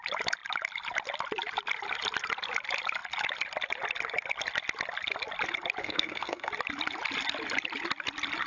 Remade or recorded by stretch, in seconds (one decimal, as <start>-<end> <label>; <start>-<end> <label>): 0.0-5.8 recorded; 5.8-6.5 remade; 6.5-8.5 recorded